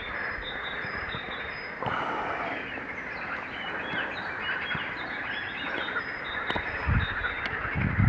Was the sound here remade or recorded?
recorded